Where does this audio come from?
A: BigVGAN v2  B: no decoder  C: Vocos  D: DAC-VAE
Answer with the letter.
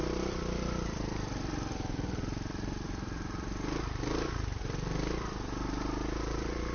A